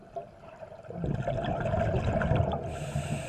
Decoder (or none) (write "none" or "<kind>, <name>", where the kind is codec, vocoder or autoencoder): none